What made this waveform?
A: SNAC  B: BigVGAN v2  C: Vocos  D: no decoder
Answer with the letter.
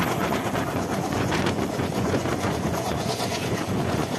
C